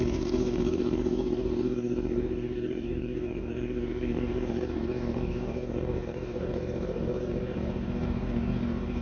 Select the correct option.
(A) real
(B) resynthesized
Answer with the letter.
B